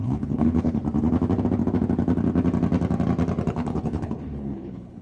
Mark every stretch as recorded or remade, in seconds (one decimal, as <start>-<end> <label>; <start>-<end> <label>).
0.0-0.8 remade; 0.8-3.5 recorded; 3.5-5.0 remade